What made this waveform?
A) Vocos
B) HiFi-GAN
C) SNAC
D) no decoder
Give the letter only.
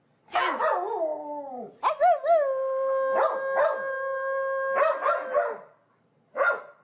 D